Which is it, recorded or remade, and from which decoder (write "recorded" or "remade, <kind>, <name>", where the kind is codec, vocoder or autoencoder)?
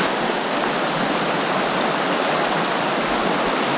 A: recorded